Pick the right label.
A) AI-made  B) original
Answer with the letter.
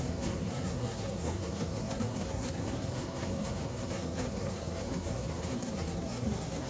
A